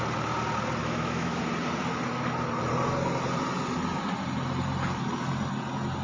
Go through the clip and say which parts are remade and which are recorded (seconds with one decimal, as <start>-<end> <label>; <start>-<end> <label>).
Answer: 0.0-0.8 recorded; 0.8-1.4 remade; 1.4-6.0 recorded